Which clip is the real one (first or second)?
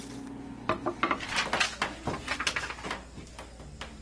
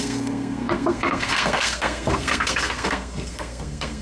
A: first